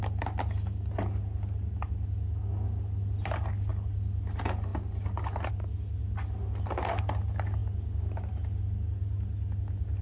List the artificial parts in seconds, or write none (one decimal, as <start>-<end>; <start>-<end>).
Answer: none